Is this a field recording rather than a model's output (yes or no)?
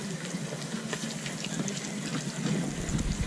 yes